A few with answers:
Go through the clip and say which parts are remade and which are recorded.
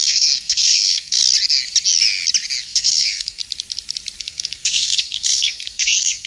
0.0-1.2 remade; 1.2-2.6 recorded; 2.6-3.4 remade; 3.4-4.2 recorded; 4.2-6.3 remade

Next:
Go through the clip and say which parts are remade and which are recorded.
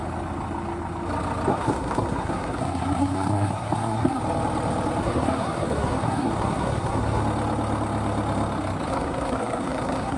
0.0-1.5 recorded; 1.5-4.2 remade; 4.2-5.0 recorded; 5.0-7.2 remade; 7.2-8.9 recorded; 8.9-10.2 remade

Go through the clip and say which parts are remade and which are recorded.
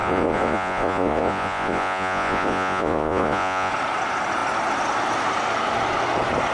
0.0-3.7 remade; 3.7-6.5 recorded